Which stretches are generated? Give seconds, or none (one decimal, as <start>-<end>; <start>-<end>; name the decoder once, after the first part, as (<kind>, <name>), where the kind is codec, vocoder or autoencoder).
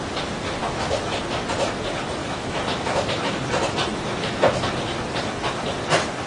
0.6-1.2 (autoencoder, DAC-VAE); 2.2-4.6